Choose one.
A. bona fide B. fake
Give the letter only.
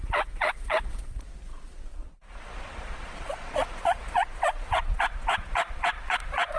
B